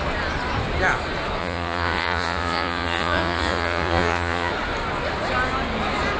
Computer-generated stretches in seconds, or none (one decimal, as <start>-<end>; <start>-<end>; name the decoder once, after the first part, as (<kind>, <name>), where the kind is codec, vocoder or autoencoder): 1.4-4.5 (vocoder, Vocos)